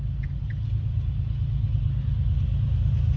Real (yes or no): yes